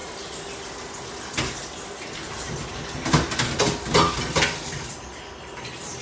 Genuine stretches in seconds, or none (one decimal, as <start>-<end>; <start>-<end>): 0.0-6.0